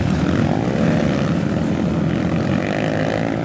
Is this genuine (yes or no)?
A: yes